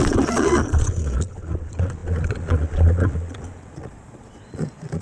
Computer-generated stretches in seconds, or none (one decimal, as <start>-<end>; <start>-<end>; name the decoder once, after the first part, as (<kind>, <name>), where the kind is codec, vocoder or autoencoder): 0.0-5.0 (vocoder, Vocos)